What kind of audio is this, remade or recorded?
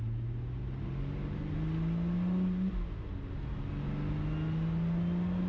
recorded